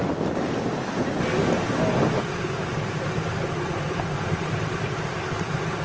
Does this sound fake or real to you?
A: real